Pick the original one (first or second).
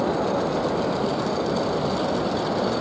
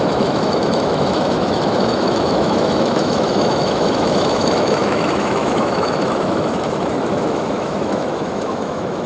first